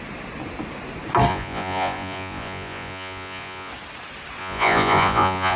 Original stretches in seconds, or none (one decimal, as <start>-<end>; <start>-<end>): 0.0-1.3; 3.7-4.4